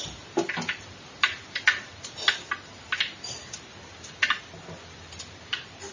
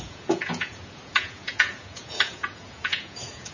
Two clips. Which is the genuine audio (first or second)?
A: first